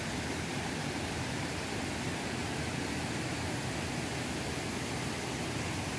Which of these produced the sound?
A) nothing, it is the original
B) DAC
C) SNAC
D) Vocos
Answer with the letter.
A